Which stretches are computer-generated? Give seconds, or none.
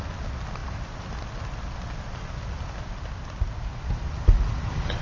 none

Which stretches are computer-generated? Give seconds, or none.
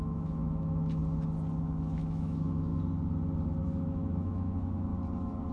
0.0-1.0 (autoencoder, DAC-VAE); 1.6-2.7; 3.6-4.9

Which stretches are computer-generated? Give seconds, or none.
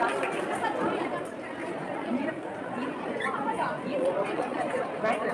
1.6-4.8 (vocoder, Vocos)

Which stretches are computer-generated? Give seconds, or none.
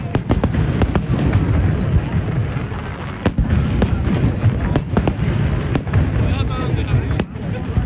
none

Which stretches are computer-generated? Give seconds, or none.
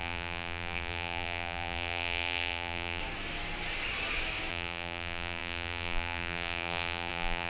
0.0-3.0 (vocoder, BigVGAN v2); 4.5-7.5